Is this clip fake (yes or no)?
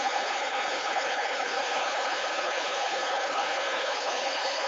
yes